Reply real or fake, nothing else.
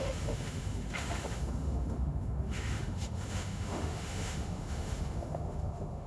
fake